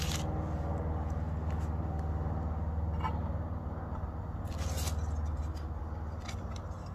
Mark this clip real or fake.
real